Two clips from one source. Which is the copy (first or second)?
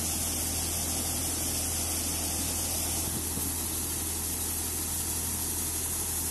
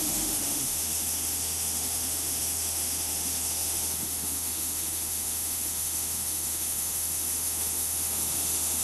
second